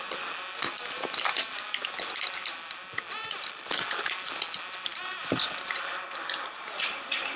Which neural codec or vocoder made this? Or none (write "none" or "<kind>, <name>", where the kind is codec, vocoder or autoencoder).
none